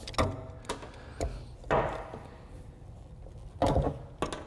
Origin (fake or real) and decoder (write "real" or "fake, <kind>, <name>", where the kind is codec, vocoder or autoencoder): real